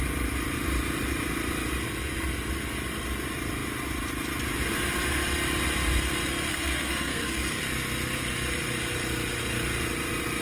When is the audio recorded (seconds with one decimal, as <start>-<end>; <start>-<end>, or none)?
0.0-6.5; 7.6-10.4

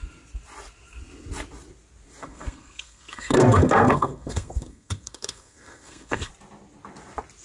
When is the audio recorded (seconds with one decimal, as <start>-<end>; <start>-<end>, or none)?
0.0-2.2; 6.3-7.4

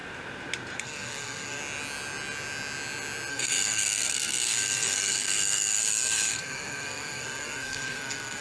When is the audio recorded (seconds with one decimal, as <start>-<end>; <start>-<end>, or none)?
0.0-0.8; 1.6-3.3